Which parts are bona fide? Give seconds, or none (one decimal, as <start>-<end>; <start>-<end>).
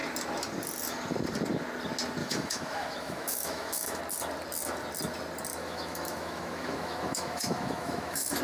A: 0.0-2.2; 4.0-5.5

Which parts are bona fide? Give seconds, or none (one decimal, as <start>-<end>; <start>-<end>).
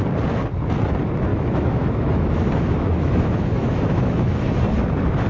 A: 0.0-1.3; 4.5-5.3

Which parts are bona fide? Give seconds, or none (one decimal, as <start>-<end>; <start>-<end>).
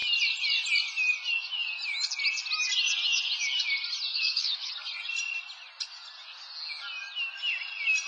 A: 0.0-4.1; 4.7-8.1